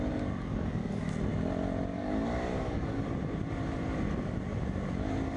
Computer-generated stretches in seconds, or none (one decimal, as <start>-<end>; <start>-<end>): 0.5-1.1; 1.9-3.1